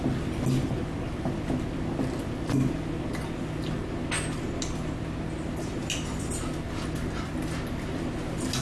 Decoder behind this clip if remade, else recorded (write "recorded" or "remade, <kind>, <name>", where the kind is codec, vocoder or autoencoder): recorded